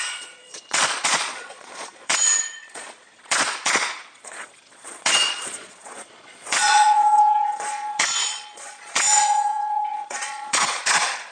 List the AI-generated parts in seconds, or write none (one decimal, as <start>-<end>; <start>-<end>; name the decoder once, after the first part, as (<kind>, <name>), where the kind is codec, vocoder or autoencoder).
0.0-11.3 (vocoder, Vocos)